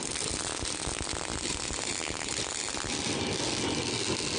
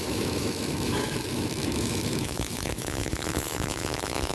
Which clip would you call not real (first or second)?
second